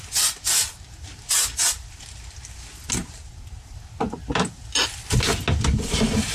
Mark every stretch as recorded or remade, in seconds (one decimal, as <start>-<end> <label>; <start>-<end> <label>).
0.0-3.0 recorded; 3.0-3.7 remade; 3.7-6.3 recorded